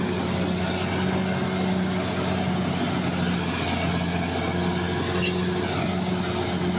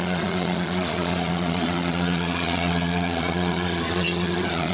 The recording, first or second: first